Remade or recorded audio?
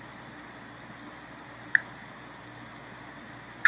recorded